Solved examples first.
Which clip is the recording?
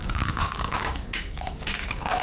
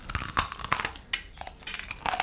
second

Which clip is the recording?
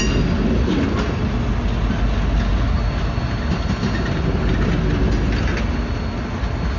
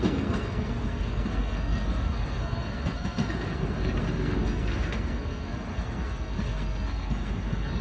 first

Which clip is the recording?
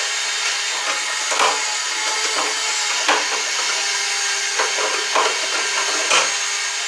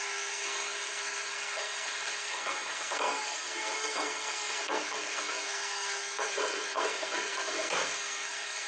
first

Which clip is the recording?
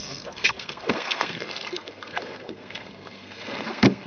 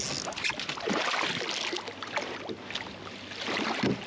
second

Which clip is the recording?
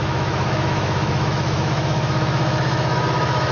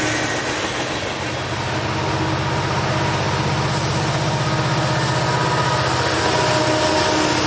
second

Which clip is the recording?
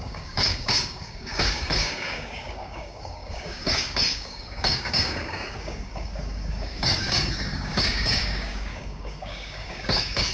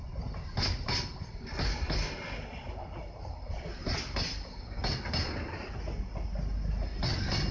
second